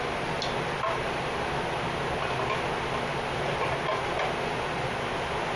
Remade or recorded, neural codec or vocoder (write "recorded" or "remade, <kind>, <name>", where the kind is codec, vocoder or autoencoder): recorded